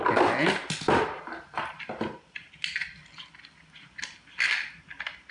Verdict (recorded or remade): recorded